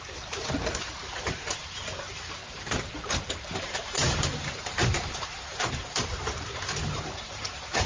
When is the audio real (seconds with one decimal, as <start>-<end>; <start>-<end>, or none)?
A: none

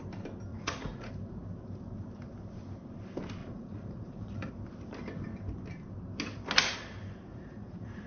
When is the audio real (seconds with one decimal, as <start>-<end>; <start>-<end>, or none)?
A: 0.0-0.5; 1.1-3.4; 4.5-7.3

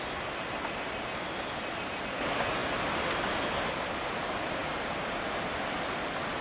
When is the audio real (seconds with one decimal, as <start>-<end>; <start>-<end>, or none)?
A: 0.0-6.4